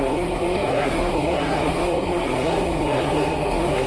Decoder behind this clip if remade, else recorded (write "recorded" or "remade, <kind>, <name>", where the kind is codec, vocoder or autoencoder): remade, codec, SNAC